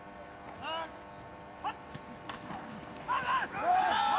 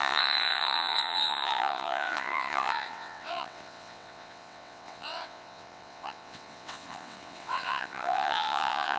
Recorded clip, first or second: first